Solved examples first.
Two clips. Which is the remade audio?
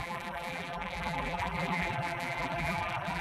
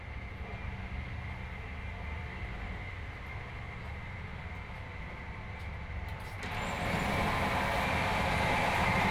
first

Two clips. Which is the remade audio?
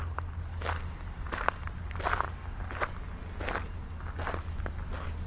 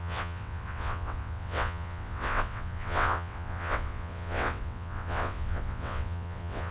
second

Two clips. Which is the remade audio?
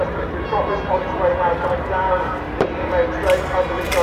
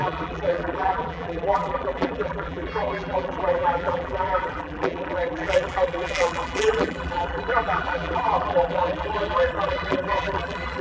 second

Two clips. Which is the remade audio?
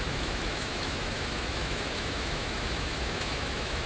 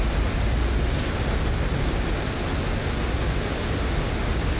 first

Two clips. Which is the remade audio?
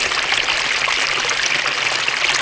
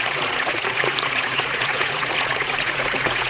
second